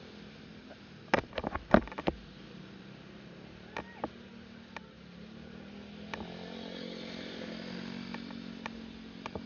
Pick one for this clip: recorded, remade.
recorded